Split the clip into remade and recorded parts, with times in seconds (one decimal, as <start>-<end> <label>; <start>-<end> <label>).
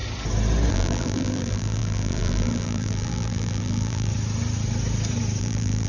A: 0.0-0.7 recorded; 0.7-4.1 remade; 4.1-5.4 recorded; 5.4-5.9 remade